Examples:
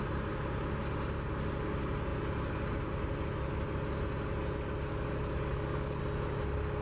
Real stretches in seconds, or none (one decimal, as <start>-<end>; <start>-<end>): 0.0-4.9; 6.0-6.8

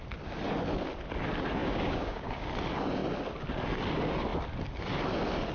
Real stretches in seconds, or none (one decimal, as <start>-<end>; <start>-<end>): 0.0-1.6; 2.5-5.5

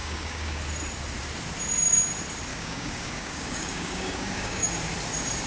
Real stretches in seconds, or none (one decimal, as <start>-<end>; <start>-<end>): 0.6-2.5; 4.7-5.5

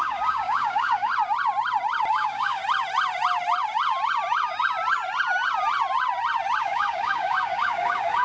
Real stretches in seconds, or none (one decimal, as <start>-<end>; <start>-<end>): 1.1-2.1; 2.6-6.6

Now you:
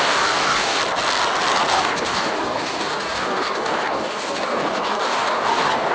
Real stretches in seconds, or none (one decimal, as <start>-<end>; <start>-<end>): 0.8-1.7

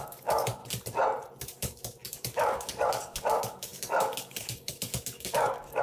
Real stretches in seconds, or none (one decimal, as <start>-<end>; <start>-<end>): 0.6-1.4

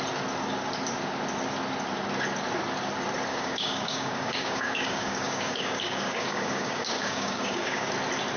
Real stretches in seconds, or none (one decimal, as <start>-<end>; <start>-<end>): 0.0-3.3; 7.9-8.4